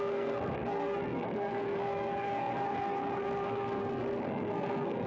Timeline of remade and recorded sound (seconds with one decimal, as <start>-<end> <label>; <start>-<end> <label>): 0.0-5.1 remade